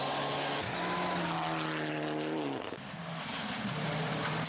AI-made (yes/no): no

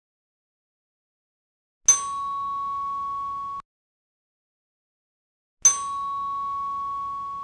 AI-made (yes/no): no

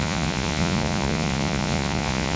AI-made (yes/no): yes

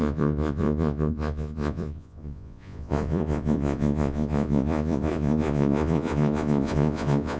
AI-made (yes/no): yes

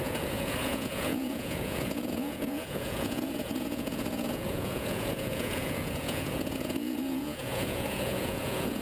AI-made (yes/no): yes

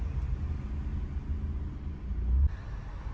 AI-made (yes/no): no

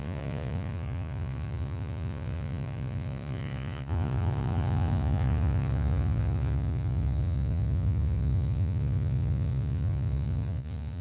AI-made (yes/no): yes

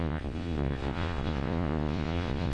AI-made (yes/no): yes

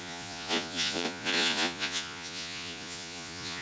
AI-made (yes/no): yes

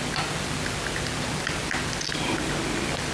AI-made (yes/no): no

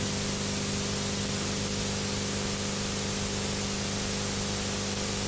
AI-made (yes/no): no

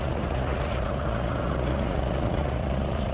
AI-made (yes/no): yes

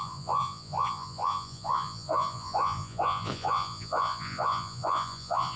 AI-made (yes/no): yes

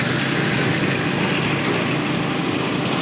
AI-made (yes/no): no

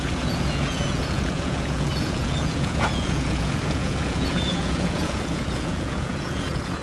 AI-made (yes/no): yes